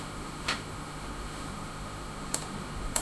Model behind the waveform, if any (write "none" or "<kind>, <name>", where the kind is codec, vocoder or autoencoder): autoencoder, DAC-VAE